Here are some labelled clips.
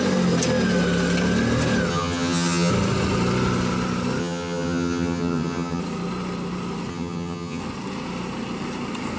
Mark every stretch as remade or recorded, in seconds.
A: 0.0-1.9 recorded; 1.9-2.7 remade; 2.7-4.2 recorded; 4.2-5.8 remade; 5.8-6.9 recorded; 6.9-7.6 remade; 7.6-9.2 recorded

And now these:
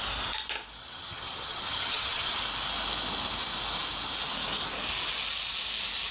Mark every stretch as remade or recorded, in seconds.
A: 0.0-0.8 recorded; 0.8-2.4 remade; 2.4-6.1 recorded